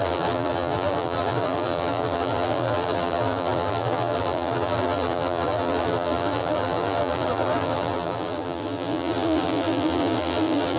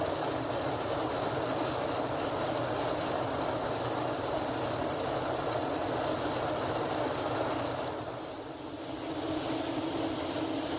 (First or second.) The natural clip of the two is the second